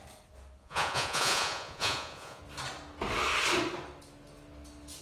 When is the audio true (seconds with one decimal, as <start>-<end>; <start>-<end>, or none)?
0.0-0.6; 2.4-5.0